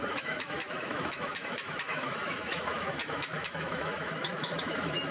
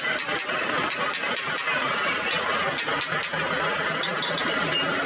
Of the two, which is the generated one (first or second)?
first